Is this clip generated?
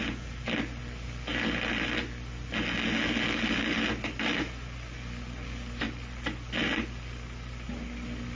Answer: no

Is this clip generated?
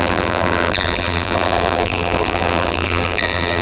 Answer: yes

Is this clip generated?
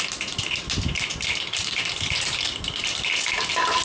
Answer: no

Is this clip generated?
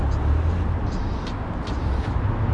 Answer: no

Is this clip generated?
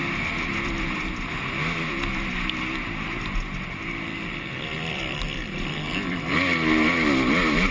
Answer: no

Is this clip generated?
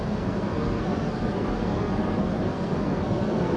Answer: yes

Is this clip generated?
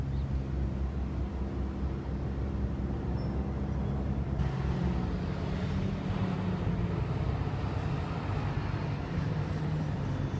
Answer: no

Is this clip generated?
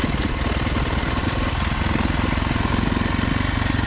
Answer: no